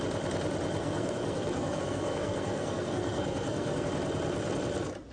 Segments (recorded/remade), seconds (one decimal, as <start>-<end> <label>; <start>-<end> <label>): 0.0-0.8 recorded; 0.8-3.9 remade; 3.9-5.1 recorded